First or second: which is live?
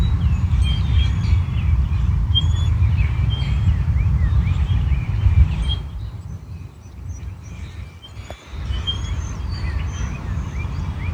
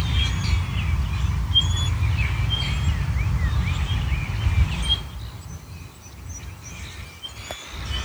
second